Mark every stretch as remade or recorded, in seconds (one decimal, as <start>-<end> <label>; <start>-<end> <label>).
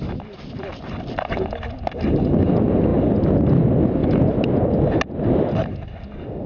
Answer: 0.0-6.5 recorded